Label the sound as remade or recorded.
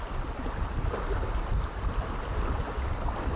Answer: recorded